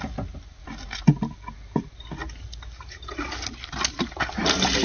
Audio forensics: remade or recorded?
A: recorded